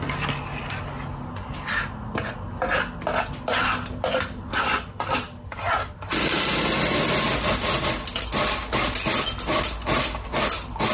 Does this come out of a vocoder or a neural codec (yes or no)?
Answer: no